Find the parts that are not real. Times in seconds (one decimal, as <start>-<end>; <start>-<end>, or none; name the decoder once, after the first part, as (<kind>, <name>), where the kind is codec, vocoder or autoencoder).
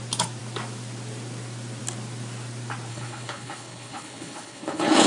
2.9-5.1 (codec, HILCodec)